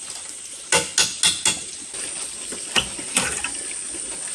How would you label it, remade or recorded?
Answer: recorded